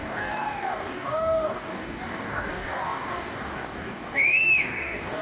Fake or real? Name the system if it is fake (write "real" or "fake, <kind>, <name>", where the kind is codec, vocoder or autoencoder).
fake, codec, DAC